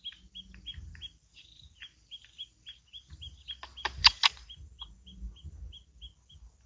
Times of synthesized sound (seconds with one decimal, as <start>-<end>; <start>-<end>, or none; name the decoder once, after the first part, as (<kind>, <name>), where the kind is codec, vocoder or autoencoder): none